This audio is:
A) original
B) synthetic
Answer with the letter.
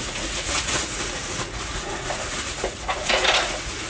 B